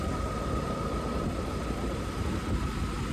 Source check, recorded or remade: recorded